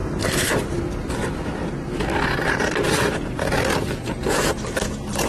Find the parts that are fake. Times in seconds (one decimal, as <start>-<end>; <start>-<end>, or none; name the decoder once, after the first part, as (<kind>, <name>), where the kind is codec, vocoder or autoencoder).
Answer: 0.0-0.8 (vocoder, BigVGAN v2)